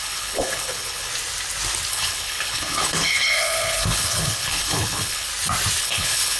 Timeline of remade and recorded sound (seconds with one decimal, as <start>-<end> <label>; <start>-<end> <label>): 0.0-1.1 remade; 1.1-1.9 recorded; 1.9-5.3 remade; 5.3-5.8 recorded; 5.8-6.4 remade